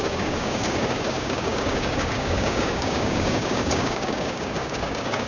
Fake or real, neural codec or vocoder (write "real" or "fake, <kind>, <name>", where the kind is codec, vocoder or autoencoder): fake, codec, DAC